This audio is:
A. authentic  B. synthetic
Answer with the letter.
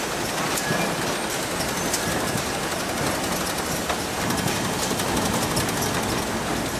A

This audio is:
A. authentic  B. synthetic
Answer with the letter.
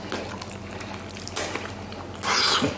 A